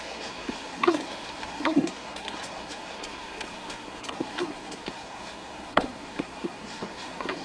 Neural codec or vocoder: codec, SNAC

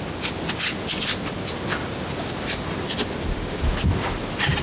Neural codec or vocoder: none